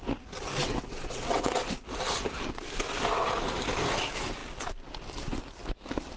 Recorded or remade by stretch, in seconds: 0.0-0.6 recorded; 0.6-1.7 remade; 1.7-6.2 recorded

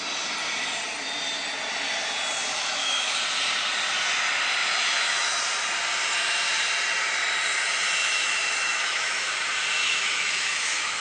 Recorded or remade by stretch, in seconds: 0.0-2.5 recorded; 2.5-3.2 remade; 3.2-4.6 recorded; 4.6-5.4 remade; 5.4-8.0 recorded; 8.0-9.3 remade; 9.3-9.8 recorded; 9.8-11.0 remade

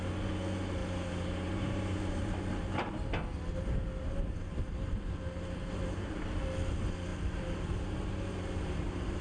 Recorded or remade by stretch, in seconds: 0.0-0.8 recorded; 0.8-2.9 remade; 2.9-4.0 recorded; 4.0-6.2 remade; 6.2-7.1 recorded; 7.1-9.2 remade